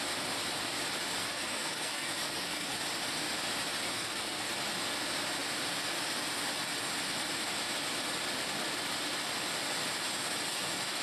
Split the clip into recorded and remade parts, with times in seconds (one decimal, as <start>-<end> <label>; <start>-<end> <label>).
0.0-1.2 recorded; 1.2-2.8 remade; 2.8-3.9 recorded; 3.9-4.5 remade; 4.5-11.0 recorded